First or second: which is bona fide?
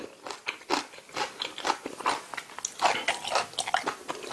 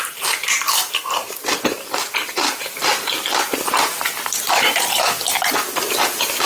first